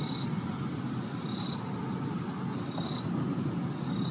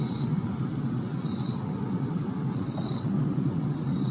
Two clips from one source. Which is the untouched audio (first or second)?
first